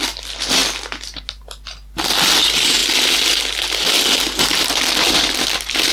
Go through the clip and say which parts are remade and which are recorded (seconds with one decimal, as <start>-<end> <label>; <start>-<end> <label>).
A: 0.0-0.6 remade; 0.6-1.4 recorded; 1.4-2.8 remade; 2.8-5.1 recorded; 5.1-5.9 remade

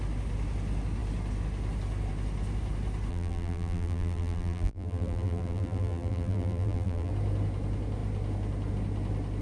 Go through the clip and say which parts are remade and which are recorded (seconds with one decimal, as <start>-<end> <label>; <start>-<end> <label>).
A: 0.0-3.1 recorded; 3.1-7.1 remade; 7.1-9.4 recorded

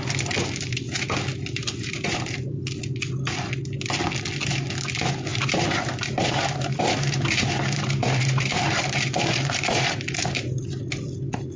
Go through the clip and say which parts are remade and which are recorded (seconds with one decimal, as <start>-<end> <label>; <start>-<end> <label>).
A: 0.0-1.6 recorded; 1.6-2.5 remade; 2.5-5.3 recorded; 5.3-10.6 remade; 10.6-11.6 recorded

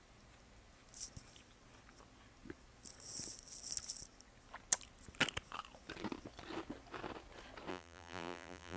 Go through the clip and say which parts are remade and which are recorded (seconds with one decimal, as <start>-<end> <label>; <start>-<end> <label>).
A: 0.0-7.7 recorded; 7.7-8.8 remade

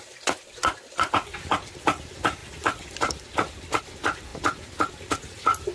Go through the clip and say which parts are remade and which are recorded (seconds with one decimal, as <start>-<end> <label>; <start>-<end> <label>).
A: 0.0-2.4 recorded; 2.4-3.8 remade; 3.8-4.3 recorded; 4.3-5.1 remade; 5.1-5.7 recorded